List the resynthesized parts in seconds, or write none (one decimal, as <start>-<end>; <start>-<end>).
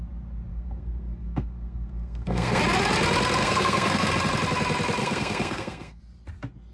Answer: 0.5-2.6; 3.4-4.1; 5.0-6.0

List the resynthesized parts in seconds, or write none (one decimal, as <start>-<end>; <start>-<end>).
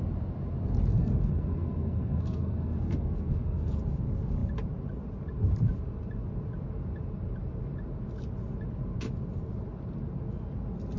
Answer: 0.9-3.7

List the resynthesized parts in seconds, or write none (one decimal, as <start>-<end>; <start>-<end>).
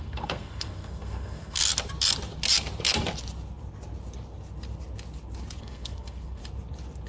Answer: 0.0-1.6; 5.6-6.4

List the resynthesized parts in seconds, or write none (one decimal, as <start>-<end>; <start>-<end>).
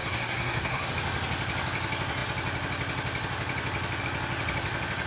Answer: 0.0-0.9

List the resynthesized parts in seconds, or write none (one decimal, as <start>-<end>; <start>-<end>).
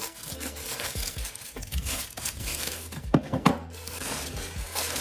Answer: 0.0-5.0